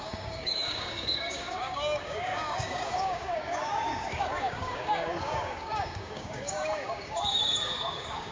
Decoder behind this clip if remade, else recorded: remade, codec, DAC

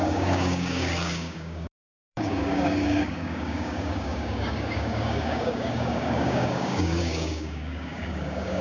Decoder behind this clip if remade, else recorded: remade, codec, DAC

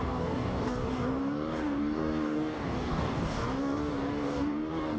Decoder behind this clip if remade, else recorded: remade, codec, DAC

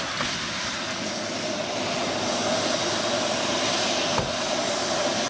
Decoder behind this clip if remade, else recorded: recorded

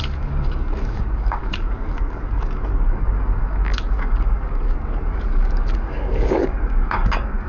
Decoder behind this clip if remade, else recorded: remade, codec, DAC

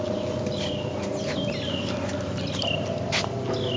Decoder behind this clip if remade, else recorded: recorded